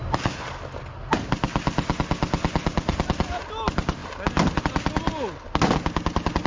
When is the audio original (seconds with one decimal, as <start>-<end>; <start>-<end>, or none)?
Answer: 0.0-6.5